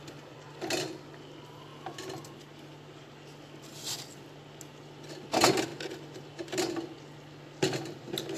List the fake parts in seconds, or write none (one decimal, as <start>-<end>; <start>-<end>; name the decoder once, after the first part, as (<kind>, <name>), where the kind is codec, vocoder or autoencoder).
none